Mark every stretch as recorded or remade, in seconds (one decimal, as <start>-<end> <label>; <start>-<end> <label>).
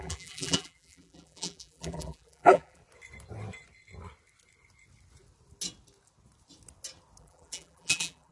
0.0-2.8 remade; 2.8-7.2 recorded; 7.2-8.3 remade